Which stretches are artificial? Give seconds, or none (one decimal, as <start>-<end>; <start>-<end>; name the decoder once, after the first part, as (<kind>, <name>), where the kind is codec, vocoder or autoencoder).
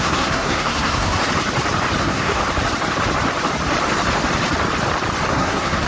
0.0-1.2 (codec, SNAC); 2.0-2.4; 5.3-5.9